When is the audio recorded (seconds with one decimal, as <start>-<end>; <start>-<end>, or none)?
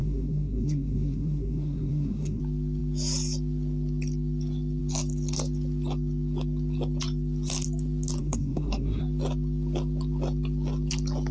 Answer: 2.4-8.2; 9.0-11.3